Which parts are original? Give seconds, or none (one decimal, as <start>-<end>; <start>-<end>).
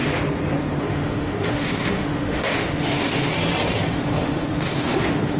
0.0-0.8; 3.3-3.8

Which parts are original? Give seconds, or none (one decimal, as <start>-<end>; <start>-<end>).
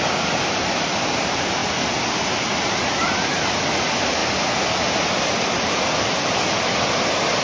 0.0-7.4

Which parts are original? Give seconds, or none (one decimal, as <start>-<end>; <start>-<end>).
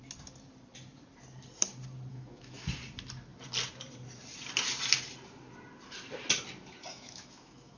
0.0-2.1; 2.6-6.9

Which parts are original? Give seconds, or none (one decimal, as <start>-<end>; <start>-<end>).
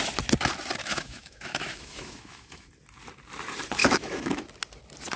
0.0-0.8; 2.7-3.8; 4.4-5.2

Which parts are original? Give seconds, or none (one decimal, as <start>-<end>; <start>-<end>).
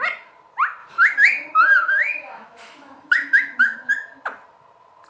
0.0-0.8; 3.9-5.1